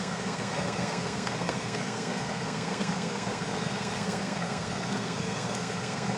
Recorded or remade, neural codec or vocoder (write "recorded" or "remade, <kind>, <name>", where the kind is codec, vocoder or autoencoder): remade, codec, SNAC